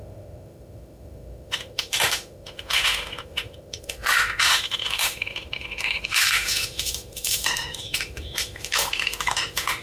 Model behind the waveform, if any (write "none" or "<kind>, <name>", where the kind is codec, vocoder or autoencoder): autoencoder, DAC-VAE